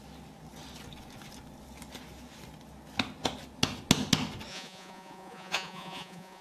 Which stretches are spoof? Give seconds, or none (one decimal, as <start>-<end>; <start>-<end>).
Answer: 4.5-6.4